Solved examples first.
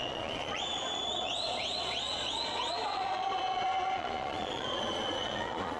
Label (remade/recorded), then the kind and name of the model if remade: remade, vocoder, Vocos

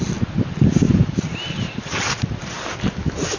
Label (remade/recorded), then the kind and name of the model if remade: recorded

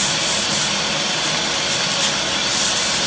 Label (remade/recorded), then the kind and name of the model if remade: recorded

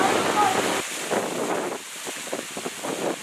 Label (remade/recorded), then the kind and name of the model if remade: recorded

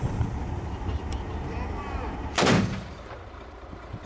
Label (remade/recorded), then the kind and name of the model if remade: remade, vocoder, BigVGAN v2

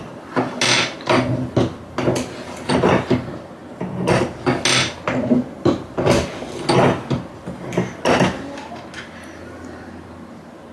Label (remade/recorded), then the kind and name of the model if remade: recorded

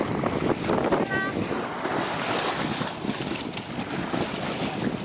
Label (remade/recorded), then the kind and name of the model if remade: recorded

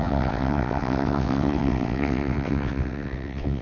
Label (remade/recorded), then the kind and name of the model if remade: remade, vocoder, WaveNeXt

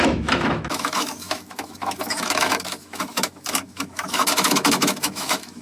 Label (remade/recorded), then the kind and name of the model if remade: remade, autoencoder, DAC-VAE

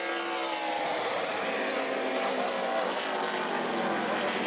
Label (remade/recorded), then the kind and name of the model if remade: recorded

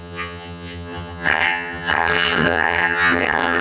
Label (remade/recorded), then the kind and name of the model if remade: remade, vocoder, HiFi-GAN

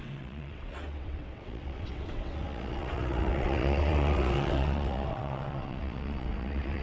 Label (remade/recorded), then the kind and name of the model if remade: remade, vocoder, WaveNeXt